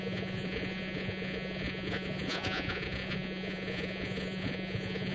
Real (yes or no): no